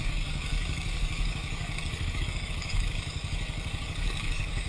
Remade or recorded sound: remade